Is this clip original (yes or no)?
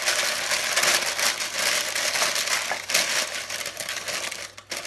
yes